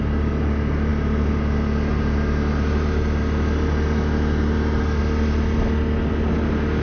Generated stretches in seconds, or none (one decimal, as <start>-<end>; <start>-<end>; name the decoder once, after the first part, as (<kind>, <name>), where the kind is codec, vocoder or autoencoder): none